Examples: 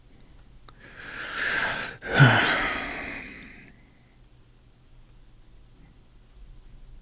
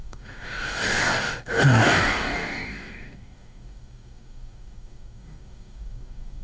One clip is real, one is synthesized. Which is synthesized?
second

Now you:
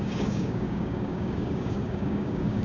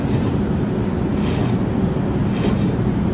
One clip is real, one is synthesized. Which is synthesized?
first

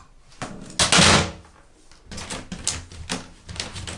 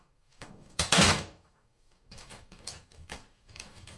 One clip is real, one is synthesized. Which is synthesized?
second